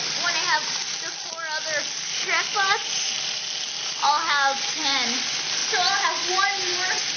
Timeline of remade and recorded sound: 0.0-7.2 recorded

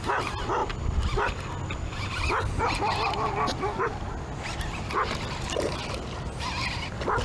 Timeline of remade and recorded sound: 0.0-7.2 recorded

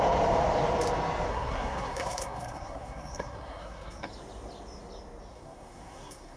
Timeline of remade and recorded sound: 0.0-1.3 recorded; 1.3-4.1 remade; 4.1-5.3 recorded; 5.3-6.4 remade